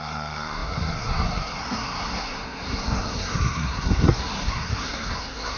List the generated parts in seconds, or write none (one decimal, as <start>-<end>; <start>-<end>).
0.0-5.6